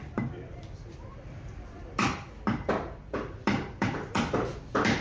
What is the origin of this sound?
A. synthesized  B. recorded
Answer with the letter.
A